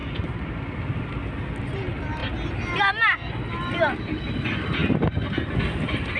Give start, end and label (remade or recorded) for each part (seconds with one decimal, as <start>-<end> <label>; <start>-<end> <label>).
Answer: 0.0-6.2 recorded